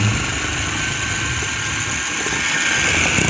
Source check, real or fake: fake